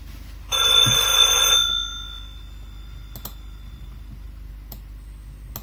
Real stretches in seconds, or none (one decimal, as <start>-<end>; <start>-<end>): 0.0-5.6